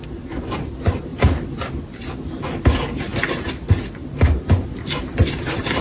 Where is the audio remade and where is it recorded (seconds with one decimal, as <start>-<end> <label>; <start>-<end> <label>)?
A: 0.0-5.8 recorded

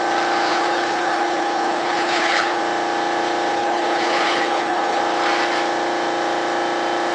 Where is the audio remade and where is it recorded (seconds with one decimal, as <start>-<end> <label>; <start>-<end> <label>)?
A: 0.0-0.5 recorded; 0.5-2.6 remade; 2.6-3.5 recorded; 3.5-5.0 remade; 5.0-7.1 recorded

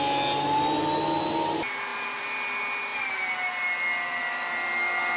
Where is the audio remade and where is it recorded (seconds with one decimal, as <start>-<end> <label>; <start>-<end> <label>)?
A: 0.0-5.2 recorded

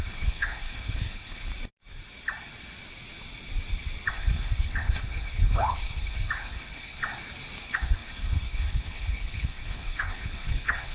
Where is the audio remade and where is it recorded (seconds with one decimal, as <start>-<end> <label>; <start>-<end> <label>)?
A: 0.0-1.5 remade; 1.5-4.1 recorded; 4.1-7.0 remade; 7.0-7.6 recorded; 7.6-10.9 remade

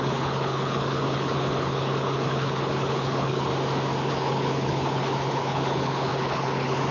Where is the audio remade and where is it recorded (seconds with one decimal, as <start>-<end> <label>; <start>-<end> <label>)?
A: 0.0-3.5 remade; 3.5-4.1 recorded; 4.1-6.9 remade

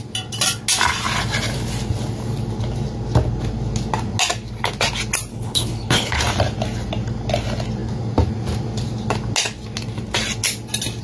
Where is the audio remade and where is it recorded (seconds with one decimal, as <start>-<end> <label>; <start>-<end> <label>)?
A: 0.0-5.3 recorded; 5.3-6.2 remade; 6.2-11.0 recorded